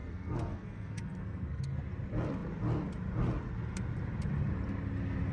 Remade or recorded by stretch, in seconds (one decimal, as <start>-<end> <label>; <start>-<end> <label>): 0.0-1.8 remade; 1.8-5.3 recorded